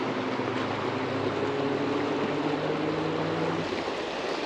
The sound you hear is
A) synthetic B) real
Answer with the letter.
B